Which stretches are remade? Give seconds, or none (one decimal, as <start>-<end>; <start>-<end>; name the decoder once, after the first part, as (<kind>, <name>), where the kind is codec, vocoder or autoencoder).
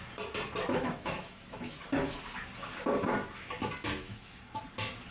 0.7-2.2 (autoencoder, DAC-VAE); 4.0-4.6